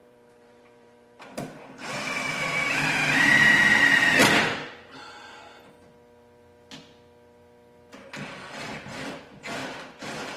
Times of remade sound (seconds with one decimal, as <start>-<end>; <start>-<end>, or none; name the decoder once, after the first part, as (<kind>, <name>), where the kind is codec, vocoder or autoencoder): 0.0-3.5 (vocoder, BigVGAN v2)